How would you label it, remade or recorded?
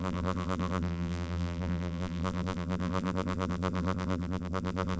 remade